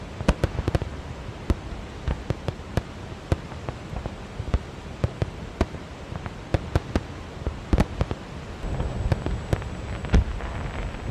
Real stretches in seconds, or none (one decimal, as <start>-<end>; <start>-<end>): 0.0-11.1